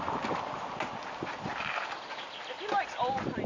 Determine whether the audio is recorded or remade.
recorded